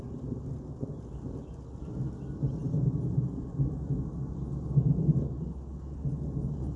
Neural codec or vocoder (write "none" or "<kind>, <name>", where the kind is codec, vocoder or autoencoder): none